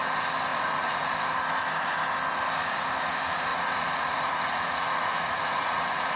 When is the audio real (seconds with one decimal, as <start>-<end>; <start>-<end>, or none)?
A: 0.0-0.5; 1.1-3.5